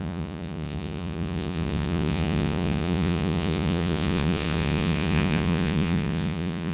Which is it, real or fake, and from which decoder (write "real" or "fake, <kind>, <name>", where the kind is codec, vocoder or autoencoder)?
fake, vocoder, Vocos